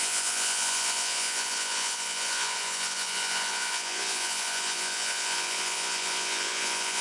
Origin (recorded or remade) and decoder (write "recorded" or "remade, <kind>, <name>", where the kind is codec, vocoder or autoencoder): remade, vocoder, Vocos